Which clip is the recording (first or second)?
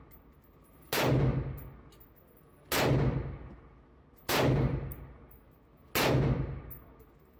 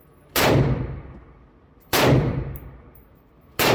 first